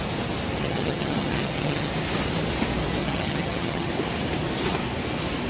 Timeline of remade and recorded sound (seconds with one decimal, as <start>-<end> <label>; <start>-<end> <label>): 0.0-0.6 recorded; 0.6-1.9 remade; 1.9-3.0 recorded; 3.0-3.9 remade; 3.9-5.5 recorded